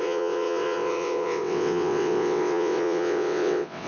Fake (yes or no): yes